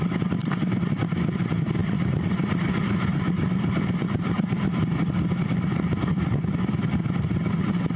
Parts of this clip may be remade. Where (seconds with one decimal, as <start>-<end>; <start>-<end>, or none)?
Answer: 1.8-6.5